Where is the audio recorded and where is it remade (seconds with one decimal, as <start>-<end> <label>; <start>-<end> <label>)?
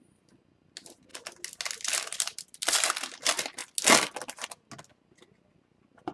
0.0-6.1 recorded